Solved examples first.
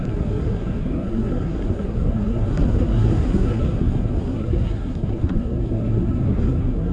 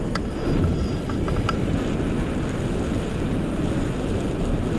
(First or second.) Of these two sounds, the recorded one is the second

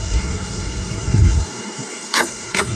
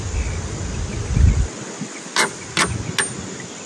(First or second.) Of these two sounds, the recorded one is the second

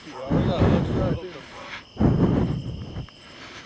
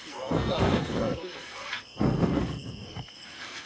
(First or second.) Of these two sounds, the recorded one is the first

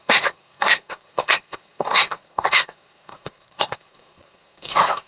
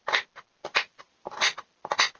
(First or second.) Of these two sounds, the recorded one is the second